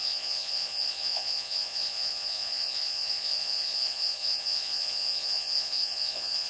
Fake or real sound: fake